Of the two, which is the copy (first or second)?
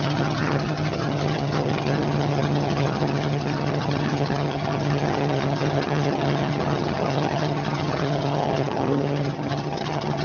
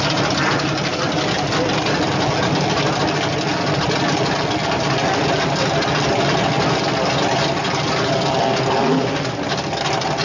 first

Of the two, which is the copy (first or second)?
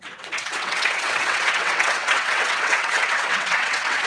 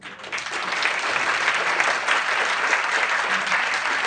first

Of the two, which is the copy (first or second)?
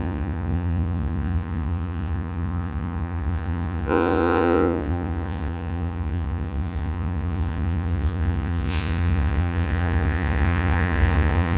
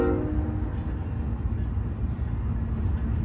first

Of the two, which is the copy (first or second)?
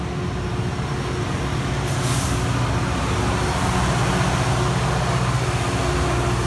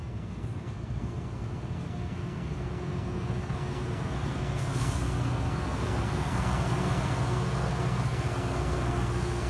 second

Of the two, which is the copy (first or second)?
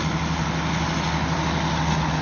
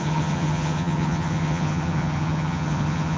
second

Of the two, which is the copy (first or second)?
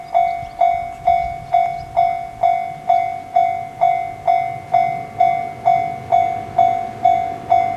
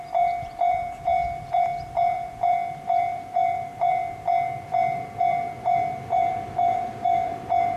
second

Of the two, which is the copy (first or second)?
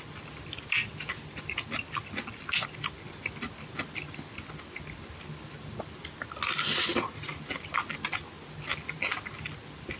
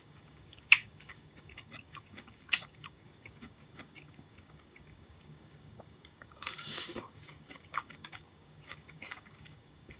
second